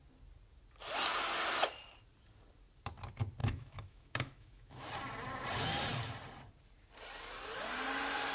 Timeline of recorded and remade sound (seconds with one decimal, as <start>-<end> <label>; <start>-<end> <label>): 0.0-3.4 recorded; 3.4-4.9 remade; 4.9-8.3 recorded